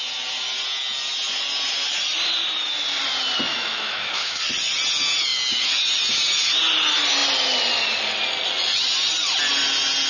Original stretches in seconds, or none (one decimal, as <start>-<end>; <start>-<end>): 0.0-3.5; 4.4-10.1